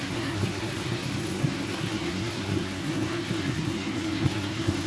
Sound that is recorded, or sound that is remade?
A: remade